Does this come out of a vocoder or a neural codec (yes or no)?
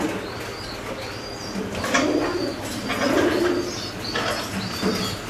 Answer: no